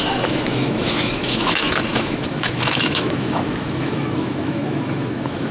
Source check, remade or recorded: remade